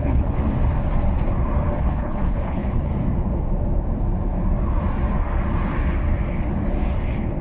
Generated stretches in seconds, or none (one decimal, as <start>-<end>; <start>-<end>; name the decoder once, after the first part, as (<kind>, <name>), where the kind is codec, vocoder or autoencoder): 0.0-0.4 (codec, HILCodec); 1.8-2.9